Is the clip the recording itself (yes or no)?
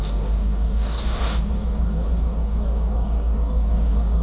no